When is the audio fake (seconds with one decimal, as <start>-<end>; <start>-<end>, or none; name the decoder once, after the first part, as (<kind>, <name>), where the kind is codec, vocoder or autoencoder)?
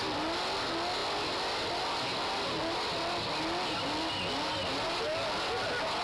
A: none